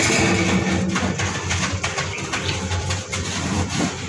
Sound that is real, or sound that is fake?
real